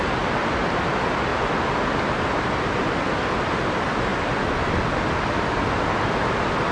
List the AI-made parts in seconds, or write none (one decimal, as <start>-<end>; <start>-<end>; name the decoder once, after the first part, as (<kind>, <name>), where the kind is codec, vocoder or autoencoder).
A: none